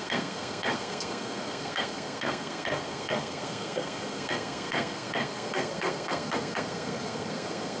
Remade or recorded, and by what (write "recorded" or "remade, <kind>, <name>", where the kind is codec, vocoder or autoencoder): remade, codec, SNAC